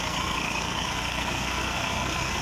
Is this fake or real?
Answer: fake